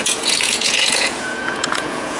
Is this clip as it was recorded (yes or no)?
no